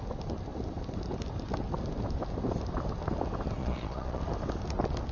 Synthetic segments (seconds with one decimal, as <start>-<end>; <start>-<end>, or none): 3.6-4.2